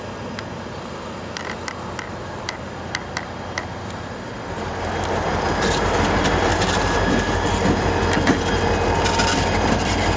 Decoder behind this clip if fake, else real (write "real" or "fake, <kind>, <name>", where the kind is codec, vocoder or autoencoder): real